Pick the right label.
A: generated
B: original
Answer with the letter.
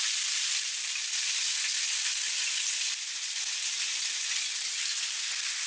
B